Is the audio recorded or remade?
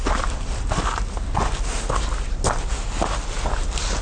recorded